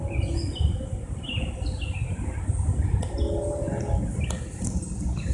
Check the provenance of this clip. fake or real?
real